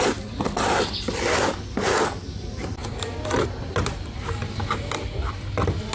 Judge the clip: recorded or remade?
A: recorded